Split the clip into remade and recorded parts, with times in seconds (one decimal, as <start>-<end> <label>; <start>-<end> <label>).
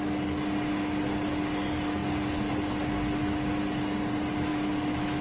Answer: 0.0-4.5 recorded; 4.5-5.2 remade